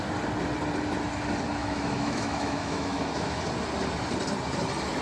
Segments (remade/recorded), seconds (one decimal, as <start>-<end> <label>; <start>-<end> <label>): 0.0-1.6 recorded; 1.6-3.4 remade; 3.4-5.0 recorded